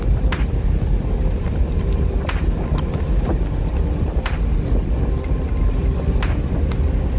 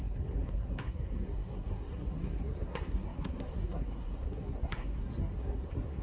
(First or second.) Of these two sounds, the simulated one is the second